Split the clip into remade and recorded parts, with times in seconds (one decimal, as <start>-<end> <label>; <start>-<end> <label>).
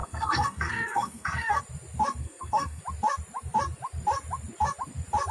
0.0-1.6 remade; 1.6-2.2 recorded; 2.2-2.8 remade; 2.8-5.3 recorded